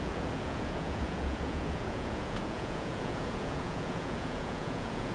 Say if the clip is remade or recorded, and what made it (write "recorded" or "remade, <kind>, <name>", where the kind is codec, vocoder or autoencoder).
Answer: remade, vocoder, Vocos